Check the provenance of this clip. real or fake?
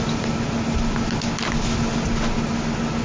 real